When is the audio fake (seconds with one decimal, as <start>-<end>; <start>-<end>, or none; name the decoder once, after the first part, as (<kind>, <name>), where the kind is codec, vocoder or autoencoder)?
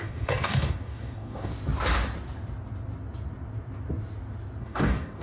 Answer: 0.0-1.5 (codec, DAC); 4.6-5.2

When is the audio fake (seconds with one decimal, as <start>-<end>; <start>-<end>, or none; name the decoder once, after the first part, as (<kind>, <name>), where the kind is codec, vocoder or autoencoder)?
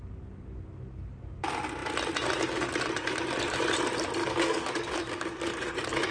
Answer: 4.2-6.1 (codec, DAC)